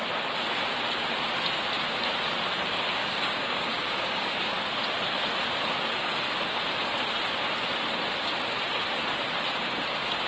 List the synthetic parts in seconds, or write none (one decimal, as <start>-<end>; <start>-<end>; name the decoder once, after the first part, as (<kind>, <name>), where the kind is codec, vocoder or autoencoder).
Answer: 3.0-4.6 (codec, DAC)